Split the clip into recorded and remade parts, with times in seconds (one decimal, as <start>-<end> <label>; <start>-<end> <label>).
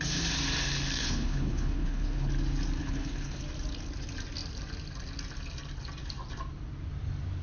0.0-1.0 recorded; 1.0-2.3 remade; 2.3-2.8 recorded; 2.8-3.4 remade; 3.4-7.4 recorded